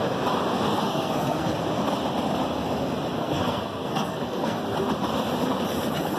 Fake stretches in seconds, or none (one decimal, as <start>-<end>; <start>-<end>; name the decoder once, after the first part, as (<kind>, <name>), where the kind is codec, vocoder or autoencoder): 0.5-1.5 (codec, SNAC); 3.2-4.6